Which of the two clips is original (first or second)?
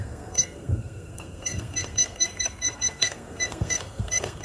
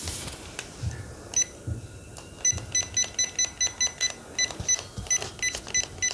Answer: second